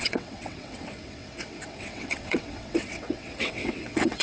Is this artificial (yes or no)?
yes